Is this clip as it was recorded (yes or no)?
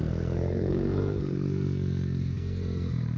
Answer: no